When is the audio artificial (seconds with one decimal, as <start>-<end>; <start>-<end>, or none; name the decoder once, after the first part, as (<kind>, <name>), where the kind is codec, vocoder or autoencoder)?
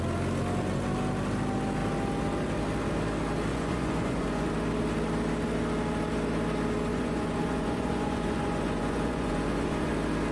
3.5-4.5 (vocoder, Vocos); 6.9-9.9